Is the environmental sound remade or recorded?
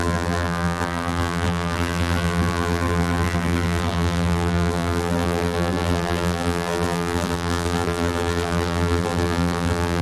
remade